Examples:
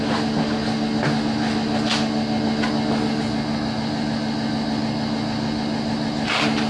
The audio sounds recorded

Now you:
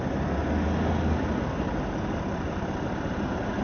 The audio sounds recorded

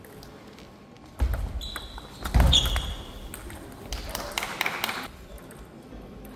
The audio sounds recorded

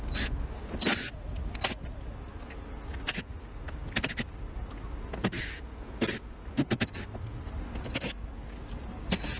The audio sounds recorded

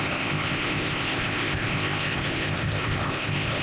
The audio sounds remade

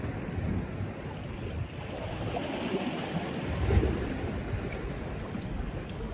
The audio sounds recorded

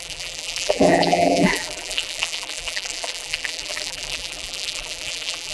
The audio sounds remade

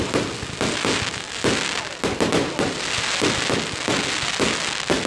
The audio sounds recorded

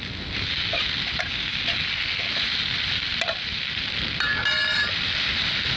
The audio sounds recorded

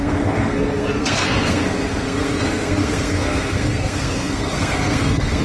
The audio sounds remade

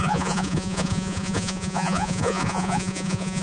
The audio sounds remade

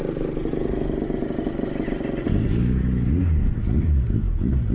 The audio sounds recorded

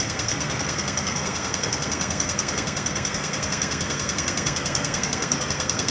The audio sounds remade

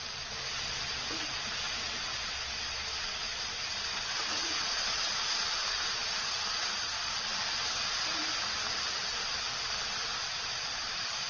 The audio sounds remade